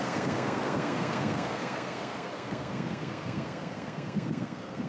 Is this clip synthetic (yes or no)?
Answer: yes